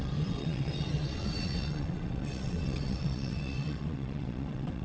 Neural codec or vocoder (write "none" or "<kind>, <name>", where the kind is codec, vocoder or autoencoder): vocoder, WaveNeXt